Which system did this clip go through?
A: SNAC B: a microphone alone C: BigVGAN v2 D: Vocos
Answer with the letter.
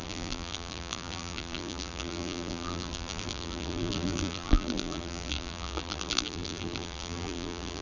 C